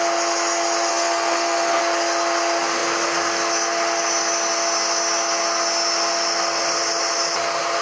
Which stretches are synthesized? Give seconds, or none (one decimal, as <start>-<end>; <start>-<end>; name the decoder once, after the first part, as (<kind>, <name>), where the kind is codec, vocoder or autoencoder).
0.9-1.8 (codec, SNAC)